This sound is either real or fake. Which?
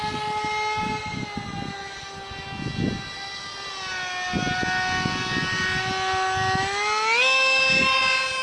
real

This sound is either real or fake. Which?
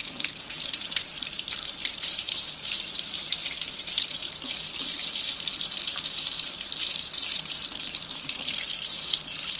fake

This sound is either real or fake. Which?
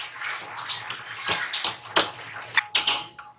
real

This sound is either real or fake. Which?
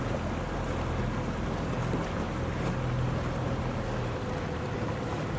real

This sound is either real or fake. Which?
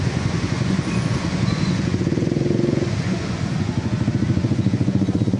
fake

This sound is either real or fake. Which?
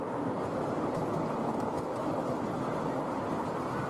real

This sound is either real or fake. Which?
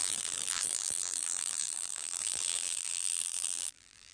fake